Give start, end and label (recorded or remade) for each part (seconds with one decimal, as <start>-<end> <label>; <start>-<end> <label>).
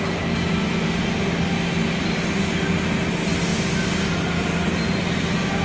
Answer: 0.0-5.6 recorded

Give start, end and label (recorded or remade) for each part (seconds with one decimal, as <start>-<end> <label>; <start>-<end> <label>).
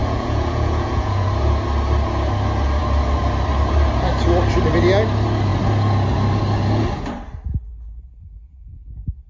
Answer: 0.0-1.3 remade; 1.3-9.3 recorded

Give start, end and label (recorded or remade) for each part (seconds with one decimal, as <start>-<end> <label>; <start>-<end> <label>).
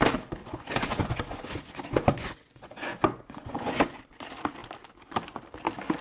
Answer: 0.0-0.4 recorded; 0.4-4.0 remade; 4.0-6.0 recorded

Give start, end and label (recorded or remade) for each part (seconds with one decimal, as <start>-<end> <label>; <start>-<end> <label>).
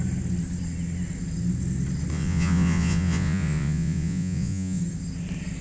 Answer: 0.0-2.1 recorded; 2.1-4.8 remade; 4.8-5.6 recorded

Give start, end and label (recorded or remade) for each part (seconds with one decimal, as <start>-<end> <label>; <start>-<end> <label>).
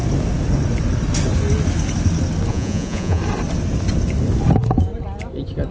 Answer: 0.0-2.5 recorded; 2.5-3.2 remade; 3.2-5.7 recorded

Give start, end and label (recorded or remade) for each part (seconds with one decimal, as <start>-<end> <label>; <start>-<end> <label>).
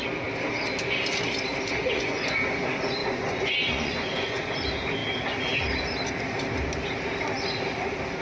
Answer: 0.0-1.8 recorded; 1.8-2.6 remade; 2.6-3.0 recorded; 3.0-4.5 remade; 4.5-8.2 recorded